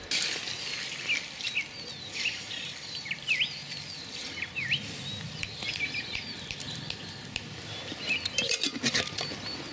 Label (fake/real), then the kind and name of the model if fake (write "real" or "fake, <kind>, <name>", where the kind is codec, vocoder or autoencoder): real